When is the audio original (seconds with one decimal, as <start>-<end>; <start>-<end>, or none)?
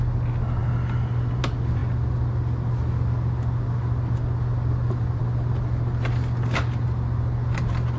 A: 0.0-8.0